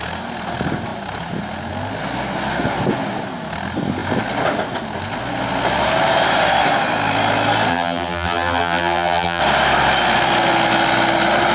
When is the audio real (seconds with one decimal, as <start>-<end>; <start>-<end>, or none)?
0.0-7.7; 9.4-11.5